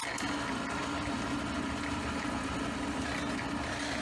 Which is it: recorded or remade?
recorded